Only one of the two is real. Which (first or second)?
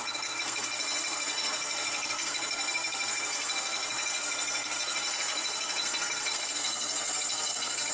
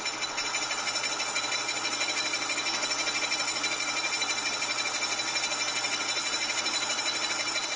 second